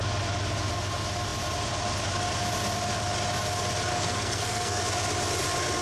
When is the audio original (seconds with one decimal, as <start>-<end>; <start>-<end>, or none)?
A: 0.0-3.9; 4.8-5.8